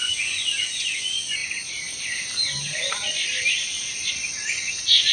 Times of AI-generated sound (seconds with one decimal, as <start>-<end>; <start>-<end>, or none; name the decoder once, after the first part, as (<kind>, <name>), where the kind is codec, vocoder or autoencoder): 0.0-1.4 (vocoder, Vocos); 4.5-5.1